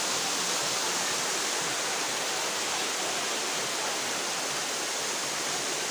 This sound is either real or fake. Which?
real